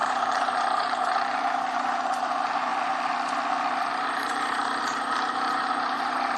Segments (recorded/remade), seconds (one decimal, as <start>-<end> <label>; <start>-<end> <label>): 0.0-2.7 remade; 2.7-3.9 recorded; 3.9-6.4 remade